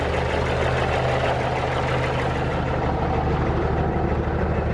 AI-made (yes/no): no